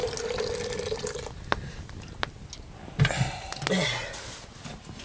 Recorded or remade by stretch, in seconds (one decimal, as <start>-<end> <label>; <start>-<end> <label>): 0.0-5.0 recorded